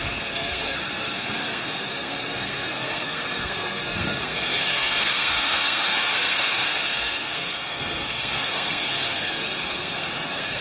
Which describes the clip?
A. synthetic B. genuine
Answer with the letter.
A